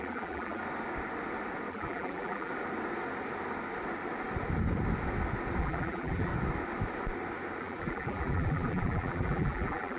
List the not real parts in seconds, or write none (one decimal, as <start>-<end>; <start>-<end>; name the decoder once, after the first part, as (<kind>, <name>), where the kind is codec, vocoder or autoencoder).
0.0-0.6 (vocoder, BigVGAN v2); 1.7-2.5; 5.6-6.3; 7.6-10.0